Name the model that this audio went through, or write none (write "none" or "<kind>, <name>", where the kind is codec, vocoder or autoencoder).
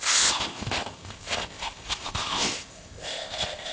codec, ZipCodec